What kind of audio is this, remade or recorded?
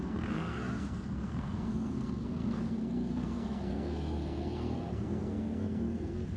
remade